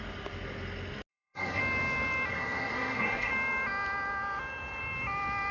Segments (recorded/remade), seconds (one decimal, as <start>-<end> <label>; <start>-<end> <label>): 0.0-1.1 recorded; 1.1-1.6 remade; 1.6-2.3 recorded; 2.3-3.3 remade; 3.3-5.5 recorded